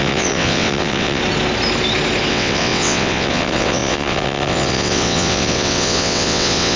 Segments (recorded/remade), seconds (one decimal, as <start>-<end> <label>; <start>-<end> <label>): 0.0-1.2 remade; 1.2-2.3 recorded; 2.3-6.8 remade